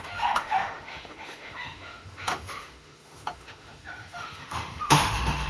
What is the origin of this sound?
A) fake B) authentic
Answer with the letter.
A